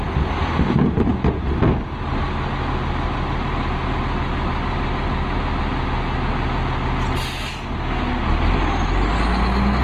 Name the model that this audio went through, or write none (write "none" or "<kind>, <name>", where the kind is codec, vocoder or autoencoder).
none